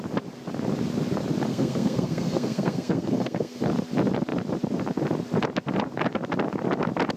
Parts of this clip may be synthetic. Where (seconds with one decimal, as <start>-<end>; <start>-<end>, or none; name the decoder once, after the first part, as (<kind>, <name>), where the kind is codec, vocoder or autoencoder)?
1.5-3.6 (codec, SNAC)